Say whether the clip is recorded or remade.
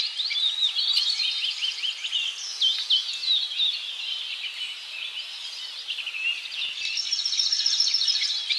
recorded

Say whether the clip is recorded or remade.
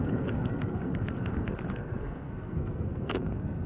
remade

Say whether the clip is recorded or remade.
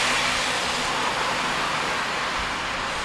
recorded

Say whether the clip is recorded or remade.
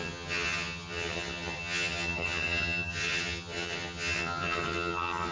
remade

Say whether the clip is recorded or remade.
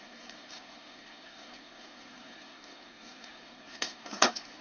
remade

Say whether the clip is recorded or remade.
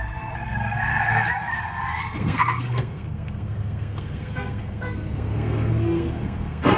remade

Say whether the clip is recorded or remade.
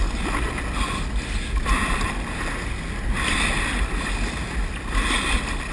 recorded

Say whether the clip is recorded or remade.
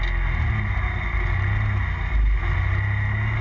recorded